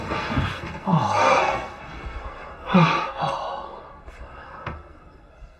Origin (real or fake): fake